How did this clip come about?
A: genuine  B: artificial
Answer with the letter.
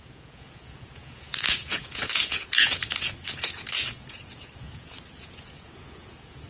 B